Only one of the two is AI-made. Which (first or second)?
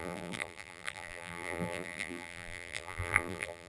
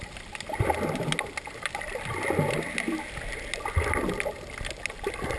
first